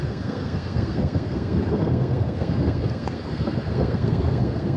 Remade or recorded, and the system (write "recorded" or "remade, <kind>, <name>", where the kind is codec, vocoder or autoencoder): remade, codec, SNAC